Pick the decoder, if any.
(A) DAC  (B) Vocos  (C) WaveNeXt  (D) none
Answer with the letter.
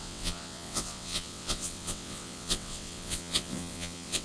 C